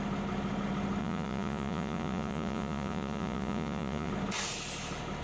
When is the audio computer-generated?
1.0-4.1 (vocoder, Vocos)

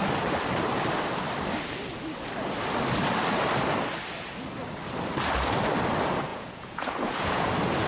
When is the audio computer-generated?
6.3-7.5 (vocoder, Vocos)

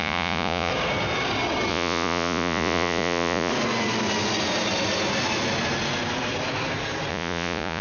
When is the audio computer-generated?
0.0-0.7 (vocoder, Vocos); 1.7-3.5; 7.1-7.8

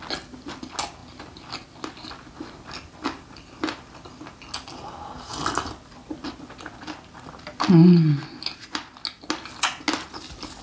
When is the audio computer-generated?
none